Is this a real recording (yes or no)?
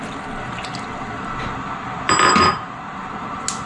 yes